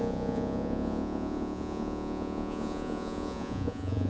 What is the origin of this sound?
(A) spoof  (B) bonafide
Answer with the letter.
A